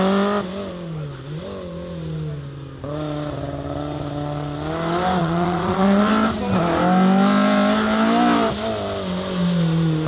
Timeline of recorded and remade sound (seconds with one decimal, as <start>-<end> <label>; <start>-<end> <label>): 0.0-5.2 recorded; 5.2-6.1 remade; 6.1-10.1 recorded